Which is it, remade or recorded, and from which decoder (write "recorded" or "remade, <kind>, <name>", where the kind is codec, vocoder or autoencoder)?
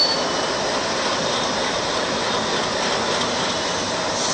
recorded